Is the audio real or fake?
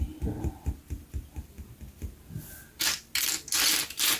real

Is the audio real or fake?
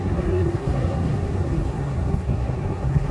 fake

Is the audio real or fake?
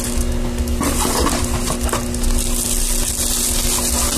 real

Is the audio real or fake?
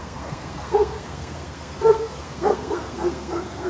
fake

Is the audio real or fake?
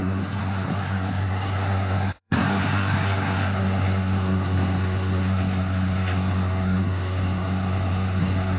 fake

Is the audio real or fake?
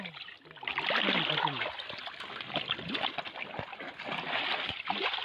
real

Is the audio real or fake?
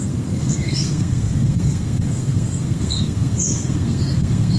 fake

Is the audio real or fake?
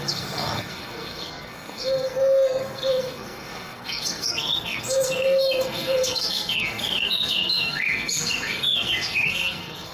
fake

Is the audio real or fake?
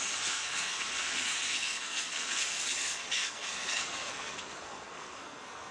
fake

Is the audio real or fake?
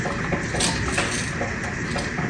real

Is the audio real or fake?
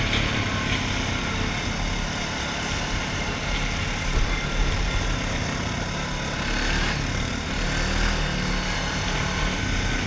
real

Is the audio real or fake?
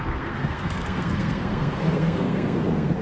fake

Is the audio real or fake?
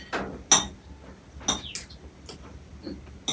real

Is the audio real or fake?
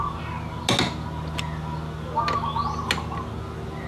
real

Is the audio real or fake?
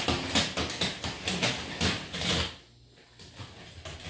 real